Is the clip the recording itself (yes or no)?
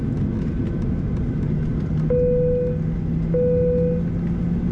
yes